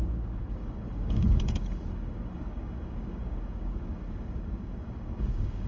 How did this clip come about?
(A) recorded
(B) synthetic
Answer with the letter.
B